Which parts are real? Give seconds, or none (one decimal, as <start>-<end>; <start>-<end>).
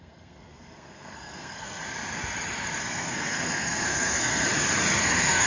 1.8-2.8; 4.3-5.0